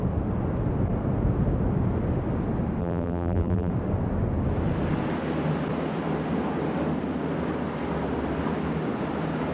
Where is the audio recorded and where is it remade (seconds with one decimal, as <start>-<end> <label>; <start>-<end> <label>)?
0.0-2.8 recorded; 2.8-3.7 remade; 3.7-9.5 recorded